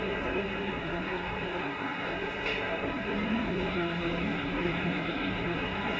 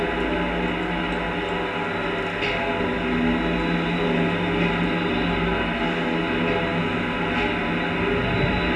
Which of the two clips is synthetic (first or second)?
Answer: first